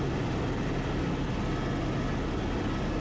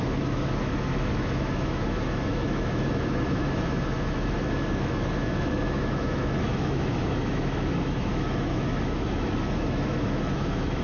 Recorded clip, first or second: first